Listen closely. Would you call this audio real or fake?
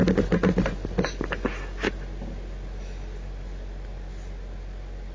real